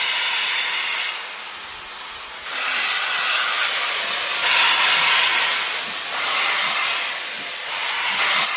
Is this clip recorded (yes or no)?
yes